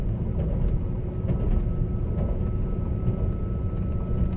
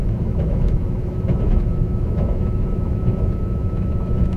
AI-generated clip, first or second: second